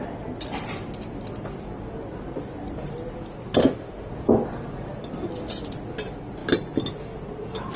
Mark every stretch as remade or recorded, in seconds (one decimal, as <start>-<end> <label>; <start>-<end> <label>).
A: 0.0-3.6 recorded; 3.6-4.1 remade; 4.1-7.8 recorded